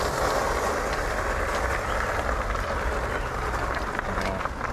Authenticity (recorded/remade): recorded